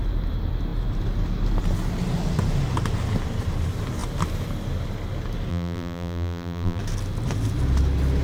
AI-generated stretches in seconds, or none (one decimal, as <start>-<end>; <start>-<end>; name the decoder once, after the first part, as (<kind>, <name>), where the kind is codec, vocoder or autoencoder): 5.5-6.8 (vocoder, BigVGAN v2)